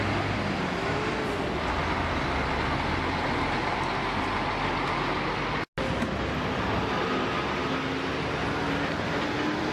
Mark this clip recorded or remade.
recorded